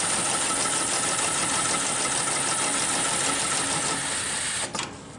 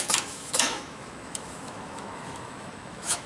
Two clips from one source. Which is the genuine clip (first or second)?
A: first